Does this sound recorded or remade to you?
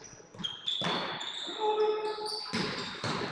recorded